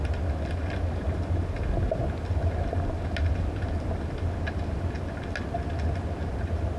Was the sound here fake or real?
real